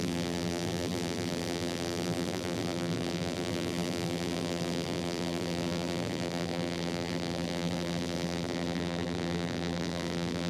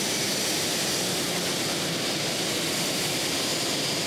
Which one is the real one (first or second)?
second